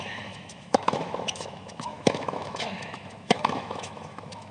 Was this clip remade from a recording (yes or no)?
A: yes